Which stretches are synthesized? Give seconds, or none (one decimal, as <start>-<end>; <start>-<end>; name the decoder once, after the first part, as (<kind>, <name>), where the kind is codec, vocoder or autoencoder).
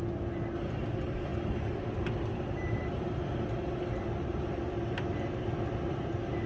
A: 0.0-6.5 (vocoder, BigVGAN v2)